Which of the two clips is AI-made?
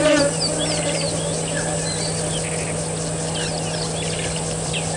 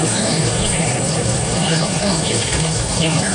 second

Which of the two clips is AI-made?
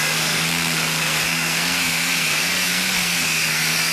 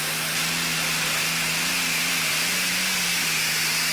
first